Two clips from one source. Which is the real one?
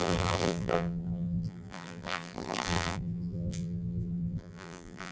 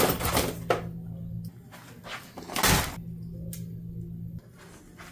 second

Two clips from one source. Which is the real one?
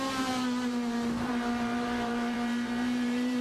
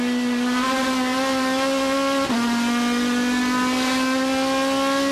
second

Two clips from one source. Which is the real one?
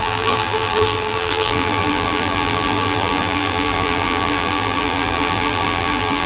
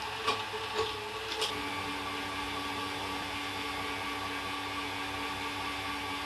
second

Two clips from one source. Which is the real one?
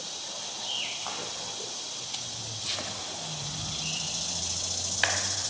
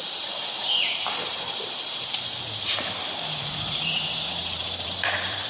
first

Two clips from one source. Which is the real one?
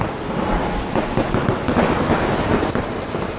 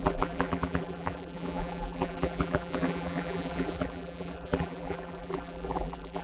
first